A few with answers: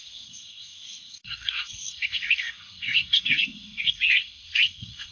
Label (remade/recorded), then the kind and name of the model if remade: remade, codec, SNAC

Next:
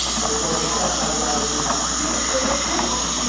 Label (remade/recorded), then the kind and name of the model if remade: recorded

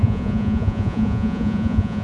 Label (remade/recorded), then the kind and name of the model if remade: remade, vocoder, Vocos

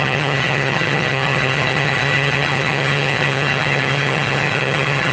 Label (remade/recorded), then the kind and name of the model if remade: remade, vocoder, HiFi-GAN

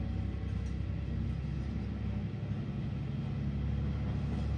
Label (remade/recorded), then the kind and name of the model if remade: recorded